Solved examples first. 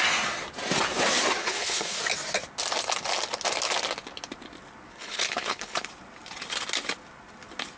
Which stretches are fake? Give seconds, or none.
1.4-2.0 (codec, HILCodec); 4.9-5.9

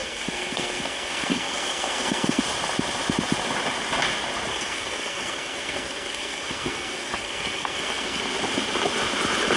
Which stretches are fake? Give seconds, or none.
0.0-2.4 (codec, SNAC); 4.5-8.2

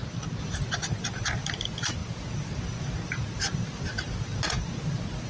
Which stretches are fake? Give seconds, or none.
none

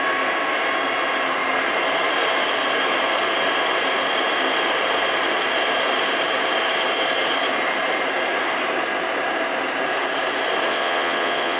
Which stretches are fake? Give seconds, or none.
10.7-11.6 (vocoder, WaveNeXt)

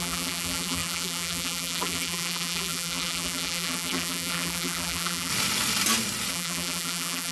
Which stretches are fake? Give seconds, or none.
0.0-5.3 (vocoder, BigVGAN v2); 6.3-7.3

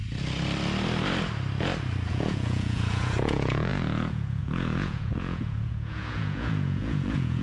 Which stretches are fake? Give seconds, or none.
2.1-7.4 (vocoder, Vocos)